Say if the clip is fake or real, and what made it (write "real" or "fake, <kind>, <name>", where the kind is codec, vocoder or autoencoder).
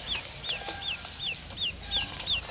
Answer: real